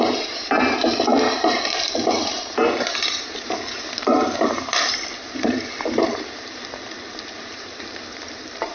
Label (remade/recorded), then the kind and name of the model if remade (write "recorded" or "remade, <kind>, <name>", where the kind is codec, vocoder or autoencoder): remade, vocoder, BigVGAN v2